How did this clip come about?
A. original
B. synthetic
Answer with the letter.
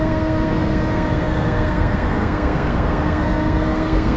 B